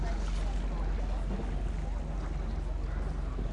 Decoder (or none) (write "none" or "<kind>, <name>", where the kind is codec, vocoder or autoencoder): none